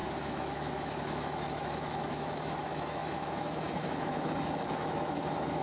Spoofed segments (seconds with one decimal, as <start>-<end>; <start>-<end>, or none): 0.0-5.6